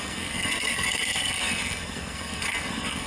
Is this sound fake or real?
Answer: fake